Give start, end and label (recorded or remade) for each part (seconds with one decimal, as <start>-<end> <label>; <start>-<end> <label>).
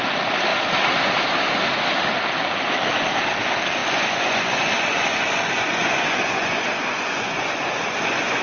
0.0-3.8 recorded; 3.8-8.4 remade